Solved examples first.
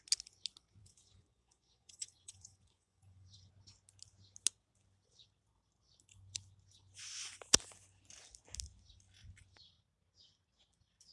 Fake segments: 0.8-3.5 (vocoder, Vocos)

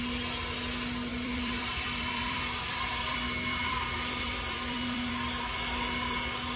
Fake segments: 1.1-5.1 (vocoder, BigVGAN v2)

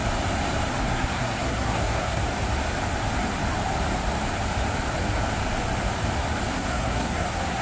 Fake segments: 0.8-2.2 (codec, SNAC); 6.5-7.6